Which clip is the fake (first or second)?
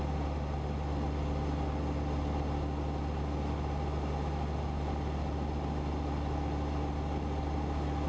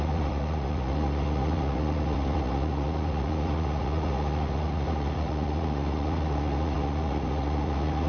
second